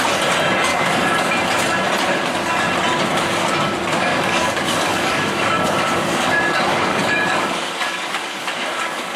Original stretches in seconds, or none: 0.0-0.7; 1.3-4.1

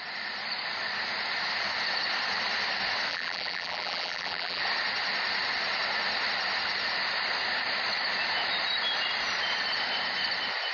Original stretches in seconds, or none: 0.0-3.1; 4.6-10.7